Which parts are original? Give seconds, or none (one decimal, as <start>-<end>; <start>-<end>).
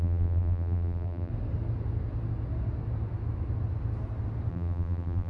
1.3-4.5